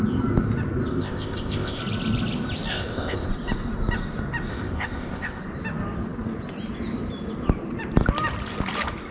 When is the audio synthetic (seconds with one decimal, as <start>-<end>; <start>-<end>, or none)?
0.9-1.8; 2.7-3.3; 4.5-5.4